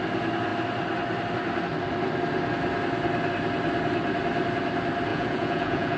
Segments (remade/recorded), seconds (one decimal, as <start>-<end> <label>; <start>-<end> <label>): 0.0-5.1 recorded; 5.1-6.0 remade